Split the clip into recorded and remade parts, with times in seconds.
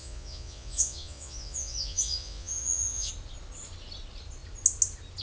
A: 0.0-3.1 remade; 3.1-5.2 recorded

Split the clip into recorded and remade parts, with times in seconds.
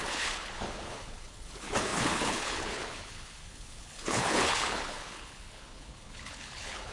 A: 0.0-6.9 remade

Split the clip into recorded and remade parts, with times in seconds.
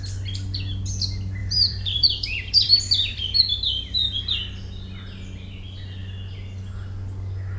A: 0.0-1.4 recorded; 1.4-3.4 remade; 3.4-7.6 recorded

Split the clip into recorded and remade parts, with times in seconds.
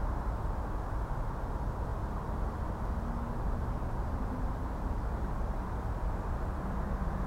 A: 0.0-7.3 recorded